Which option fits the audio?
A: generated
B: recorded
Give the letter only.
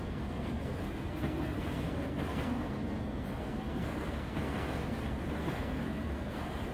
A